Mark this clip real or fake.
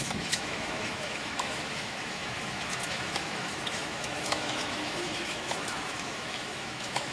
fake